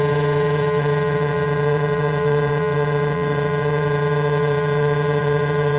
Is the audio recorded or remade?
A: remade